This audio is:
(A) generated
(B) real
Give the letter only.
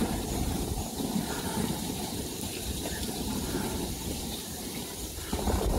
A